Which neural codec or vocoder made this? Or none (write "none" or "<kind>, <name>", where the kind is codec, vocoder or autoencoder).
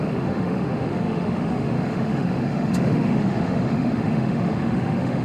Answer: autoencoder, DAC-VAE